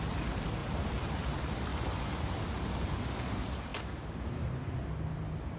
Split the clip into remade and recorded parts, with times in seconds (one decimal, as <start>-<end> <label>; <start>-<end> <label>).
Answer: 0.0-0.6 recorded; 0.6-1.2 remade; 1.2-1.7 recorded; 1.7-2.4 remade; 2.4-3.7 recorded; 3.7-4.5 remade; 4.5-5.6 recorded